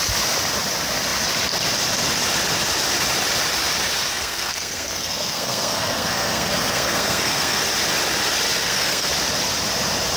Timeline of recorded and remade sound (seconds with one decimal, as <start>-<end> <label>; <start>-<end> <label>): 0.0-4.1 recorded; 4.1-7.6 remade; 7.6-8.6 recorded; 8.6-9.1 remade; 9.1-10.2 recorded